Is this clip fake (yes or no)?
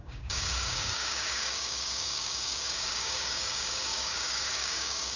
yes